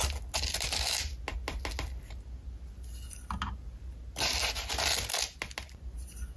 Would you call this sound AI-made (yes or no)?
no